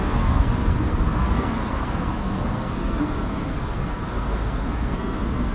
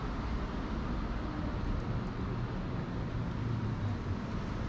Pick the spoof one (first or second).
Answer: first